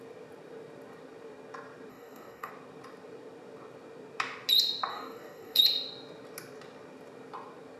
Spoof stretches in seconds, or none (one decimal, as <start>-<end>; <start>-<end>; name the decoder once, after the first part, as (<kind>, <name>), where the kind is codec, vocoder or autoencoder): 1.9-2.5 (codec, DAC); 4.9-5.6